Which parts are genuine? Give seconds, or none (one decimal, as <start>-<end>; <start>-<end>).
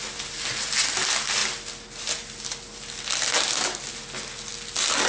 0.0-5.1